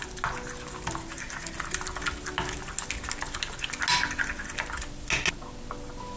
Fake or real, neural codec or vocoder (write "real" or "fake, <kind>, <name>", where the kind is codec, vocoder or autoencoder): real